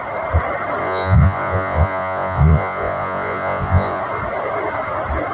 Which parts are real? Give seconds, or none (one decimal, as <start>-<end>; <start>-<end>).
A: 0.0-0.8; 4.0-5.3